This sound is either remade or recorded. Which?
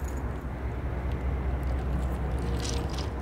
recorded